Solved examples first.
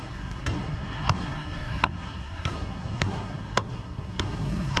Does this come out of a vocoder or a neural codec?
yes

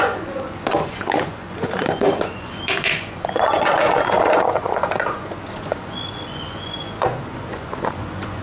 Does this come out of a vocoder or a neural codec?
yes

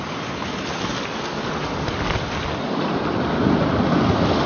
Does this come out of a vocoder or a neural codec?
no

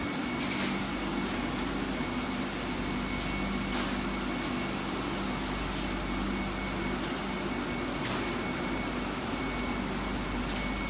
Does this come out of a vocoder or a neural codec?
no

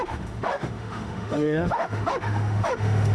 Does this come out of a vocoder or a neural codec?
yes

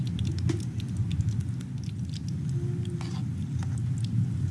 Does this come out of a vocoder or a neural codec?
no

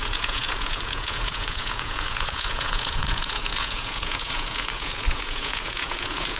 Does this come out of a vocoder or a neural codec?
yes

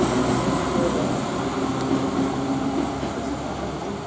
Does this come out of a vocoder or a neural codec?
no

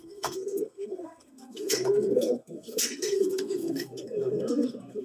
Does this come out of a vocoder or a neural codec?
yes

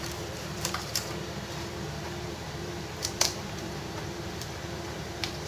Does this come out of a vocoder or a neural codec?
yes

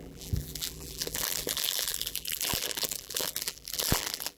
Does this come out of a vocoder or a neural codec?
yes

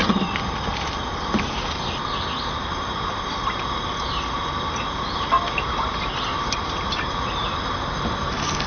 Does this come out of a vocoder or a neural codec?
no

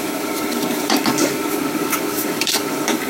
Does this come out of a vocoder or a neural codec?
yes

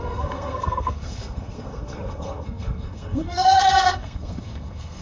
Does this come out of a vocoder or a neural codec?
yes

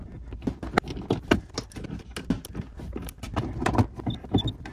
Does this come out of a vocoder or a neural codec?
no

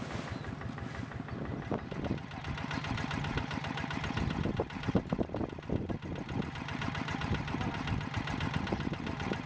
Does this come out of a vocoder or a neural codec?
no